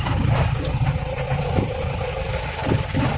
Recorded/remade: remade